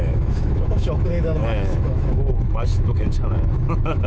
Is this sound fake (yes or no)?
yes